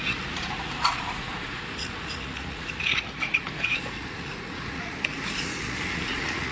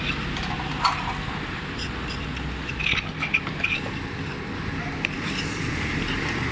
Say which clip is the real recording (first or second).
second